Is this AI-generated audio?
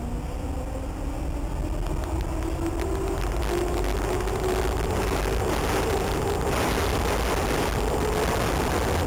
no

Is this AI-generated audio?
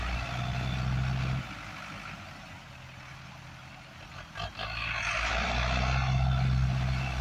no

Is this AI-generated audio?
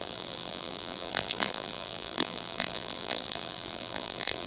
yes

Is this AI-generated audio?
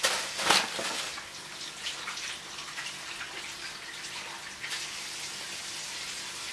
no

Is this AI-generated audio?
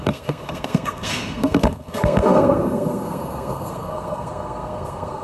yes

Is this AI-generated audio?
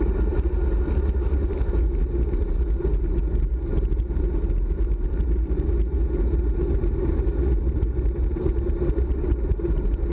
no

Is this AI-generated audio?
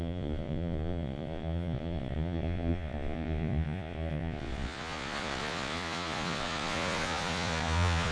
yes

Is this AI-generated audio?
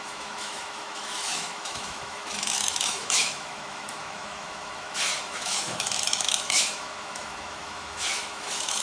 yes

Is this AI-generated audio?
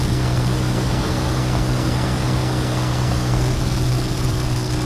yes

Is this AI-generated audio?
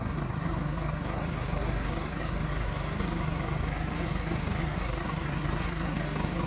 yes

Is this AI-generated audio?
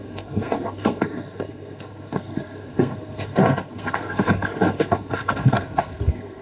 yes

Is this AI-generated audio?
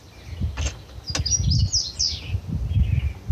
no